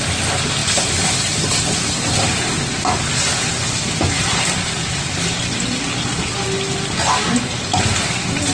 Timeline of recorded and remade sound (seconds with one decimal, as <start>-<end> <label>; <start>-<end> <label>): 0.0-8.5 recorded